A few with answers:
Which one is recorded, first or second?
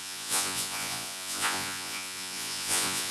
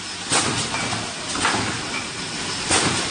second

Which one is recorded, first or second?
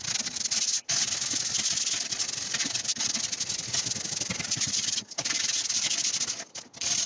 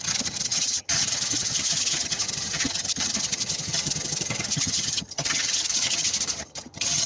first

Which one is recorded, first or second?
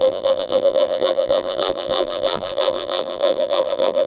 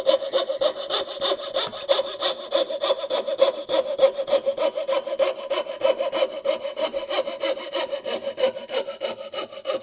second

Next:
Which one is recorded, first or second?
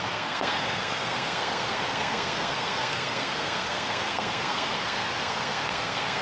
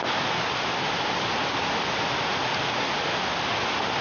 second